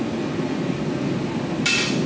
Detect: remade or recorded recorded